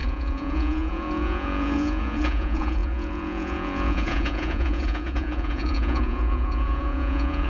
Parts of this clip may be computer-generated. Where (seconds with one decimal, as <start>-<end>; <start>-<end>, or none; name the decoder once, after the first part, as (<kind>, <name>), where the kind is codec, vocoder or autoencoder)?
0.0-7.5 (vocoder, Vocos)